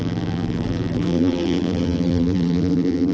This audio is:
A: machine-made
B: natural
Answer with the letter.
A